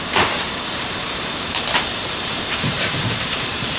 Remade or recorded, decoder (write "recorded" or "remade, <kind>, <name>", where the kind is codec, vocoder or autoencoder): remade, vocoder, BigVGAN v2